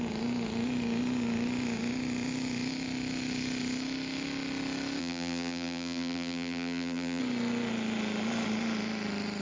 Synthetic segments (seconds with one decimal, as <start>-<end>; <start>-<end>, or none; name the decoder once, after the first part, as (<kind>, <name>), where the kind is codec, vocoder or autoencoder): 5.0-7.2 (vocoder, BigVGAN v2)